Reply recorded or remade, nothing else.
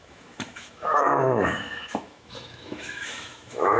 remade